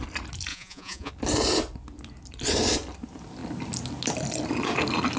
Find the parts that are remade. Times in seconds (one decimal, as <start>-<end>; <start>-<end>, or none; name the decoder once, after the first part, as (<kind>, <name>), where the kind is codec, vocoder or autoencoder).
0.5-1.1 (vocoder, Vocos)